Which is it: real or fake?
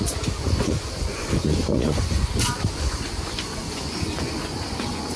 fake